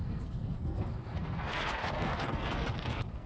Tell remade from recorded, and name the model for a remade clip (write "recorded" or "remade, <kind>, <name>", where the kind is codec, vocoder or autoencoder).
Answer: remade, codec, SNAC